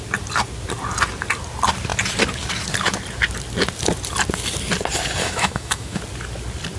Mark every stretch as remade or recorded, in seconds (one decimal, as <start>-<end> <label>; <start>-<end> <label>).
0.0-5.2 recorded; 5.2-6.0 remade; 6.0-6.8 recorded

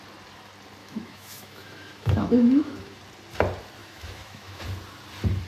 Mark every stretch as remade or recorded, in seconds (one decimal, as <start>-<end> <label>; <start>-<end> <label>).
0.0-0.8 recorded; 0.8-3.0 remade; 3.0-3.8 recorded; 3.8-4.6 remade; 4.6-5.5 recorded